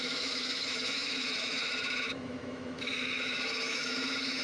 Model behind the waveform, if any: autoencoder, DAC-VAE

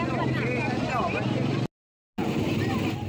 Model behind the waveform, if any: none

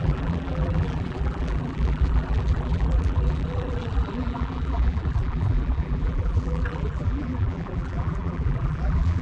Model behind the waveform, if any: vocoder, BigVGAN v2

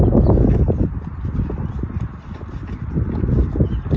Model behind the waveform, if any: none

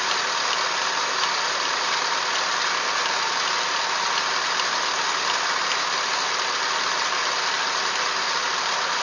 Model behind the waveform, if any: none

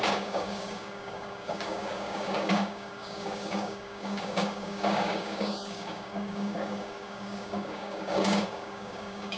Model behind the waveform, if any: codec, DAC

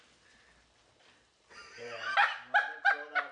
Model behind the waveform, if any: none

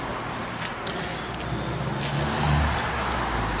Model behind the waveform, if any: none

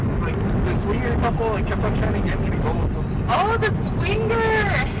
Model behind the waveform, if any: none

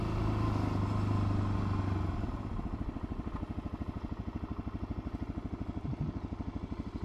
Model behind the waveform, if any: none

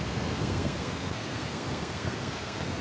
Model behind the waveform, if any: codec, SNAC